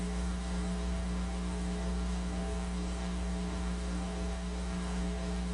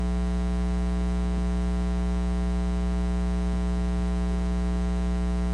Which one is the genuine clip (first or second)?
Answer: second